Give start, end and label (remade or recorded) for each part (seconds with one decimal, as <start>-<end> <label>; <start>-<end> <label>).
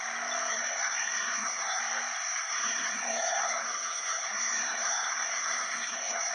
0.0-0.5 recorded; 0.5-1.8 remade; 1.8-2.4 recorded; 2.4-6.3 remade